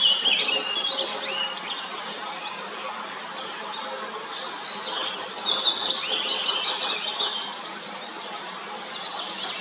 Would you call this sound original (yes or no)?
yes